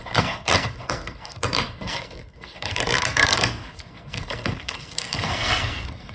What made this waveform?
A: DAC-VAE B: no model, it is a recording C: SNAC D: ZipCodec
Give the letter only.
C